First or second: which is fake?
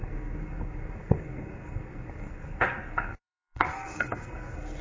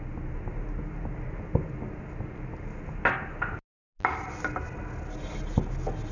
first